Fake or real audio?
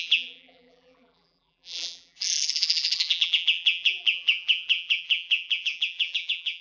fake